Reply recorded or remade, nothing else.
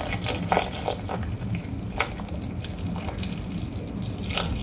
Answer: recorded